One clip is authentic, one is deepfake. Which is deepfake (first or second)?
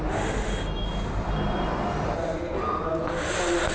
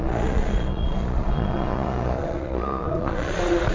second